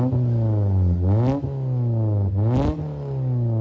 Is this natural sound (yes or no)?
yes